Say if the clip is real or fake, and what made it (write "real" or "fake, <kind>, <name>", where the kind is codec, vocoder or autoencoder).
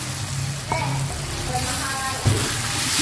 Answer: real